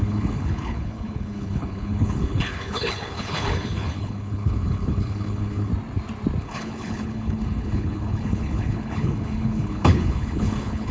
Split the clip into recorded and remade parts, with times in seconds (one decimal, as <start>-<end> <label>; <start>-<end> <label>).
0.0-5.7 remade; 5.7-6.4 recorded; 6.4-10.9 remade